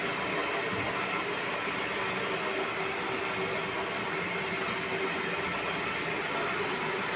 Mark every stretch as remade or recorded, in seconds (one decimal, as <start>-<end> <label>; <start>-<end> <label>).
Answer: 0.0-7.2 recorded